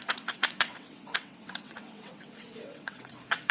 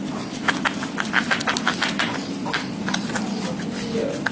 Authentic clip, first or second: second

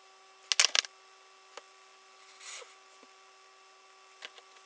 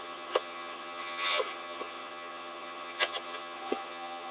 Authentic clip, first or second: first